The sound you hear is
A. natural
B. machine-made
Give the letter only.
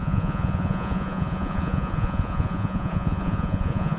B